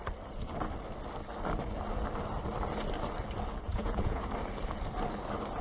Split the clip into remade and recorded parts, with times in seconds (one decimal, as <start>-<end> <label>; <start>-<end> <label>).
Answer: 0.0-3.7 recorded; 3.7-4.2 remade; 4.2-5.6 recorded